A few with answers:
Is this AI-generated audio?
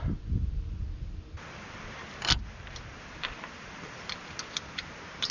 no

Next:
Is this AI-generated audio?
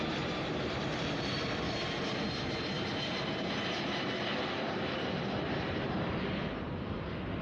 yes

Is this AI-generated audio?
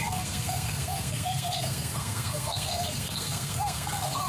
yes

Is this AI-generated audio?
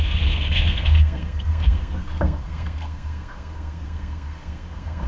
yes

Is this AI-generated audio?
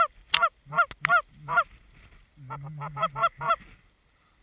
no